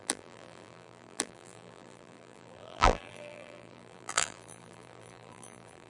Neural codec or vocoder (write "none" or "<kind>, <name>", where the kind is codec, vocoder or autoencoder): vocoder, BigVGAN v2